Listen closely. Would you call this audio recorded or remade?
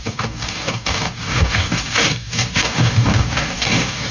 remade